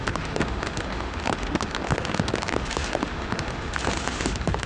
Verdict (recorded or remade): remade